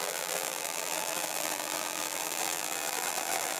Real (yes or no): no